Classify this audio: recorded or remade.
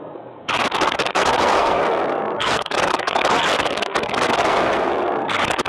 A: remade